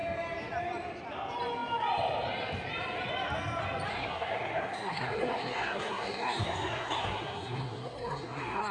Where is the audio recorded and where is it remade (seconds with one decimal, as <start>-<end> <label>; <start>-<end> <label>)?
0.0-3.9 recorded; 3.9-8.7 remade